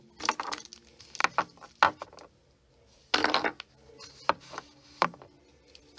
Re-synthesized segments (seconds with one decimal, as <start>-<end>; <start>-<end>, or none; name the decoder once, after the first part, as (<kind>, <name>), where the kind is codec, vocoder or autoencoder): none